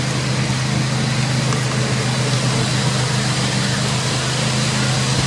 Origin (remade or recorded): recorded